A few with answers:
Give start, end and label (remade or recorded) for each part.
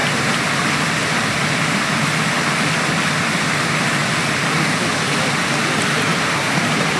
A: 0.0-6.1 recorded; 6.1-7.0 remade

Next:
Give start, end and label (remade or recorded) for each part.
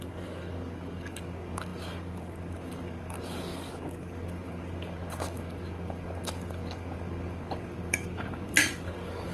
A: 0.0-9.3 remade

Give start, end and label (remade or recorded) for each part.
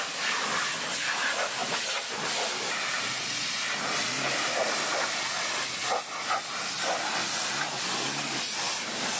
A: 0.0-9.2 recorded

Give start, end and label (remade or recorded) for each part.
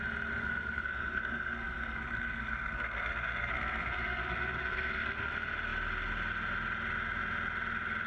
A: 0.0-0.4 recorded; 0.4-5.3 remade; 5.3-8.1 recorded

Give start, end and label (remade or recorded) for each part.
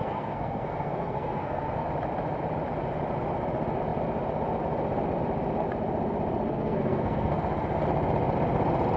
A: 0.0-1.9 remade; 1.9-6.5 recorded; 6.5-7.4 remade; 7.4-9.0 recorded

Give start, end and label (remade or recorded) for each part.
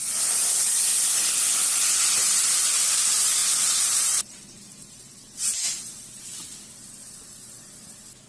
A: 0.0-8.3 recorded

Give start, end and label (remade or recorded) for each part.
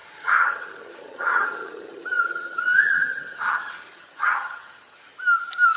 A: 0.0-5.1 remade; 5.1-5.8 recorded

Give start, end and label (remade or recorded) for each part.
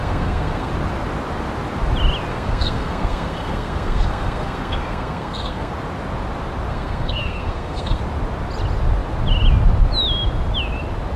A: 0.0-0.7 remade; 0.7-2.3 recorded; 2.3-5.7 remade; 5.7-6.7 recorded; 6.7-8.0 remade; 8.0-11.2 recorded